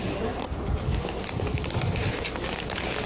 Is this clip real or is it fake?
real